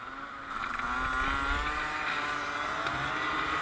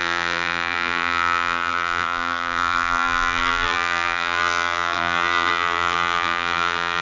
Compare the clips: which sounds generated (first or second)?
second